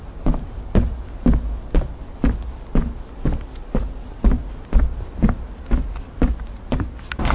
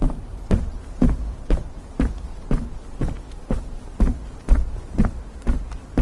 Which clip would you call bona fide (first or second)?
first